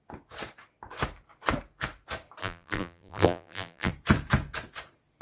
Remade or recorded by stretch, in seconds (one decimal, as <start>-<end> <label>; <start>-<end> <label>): 0.0-2.4 recorded; 2.4-3.9 remade; 3.9-5.2 recorded

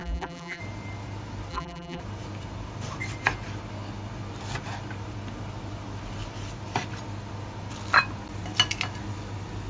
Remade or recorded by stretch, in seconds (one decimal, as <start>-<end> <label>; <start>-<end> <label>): 0.0-0.6 remade; 0.6-1.5 recorded; 1.5-2.0 remade; 2.0-9.7 recorded

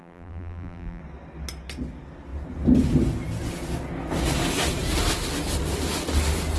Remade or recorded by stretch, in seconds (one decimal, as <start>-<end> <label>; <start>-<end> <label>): 0.0-1.0 remade; 1.0-6.6 recorded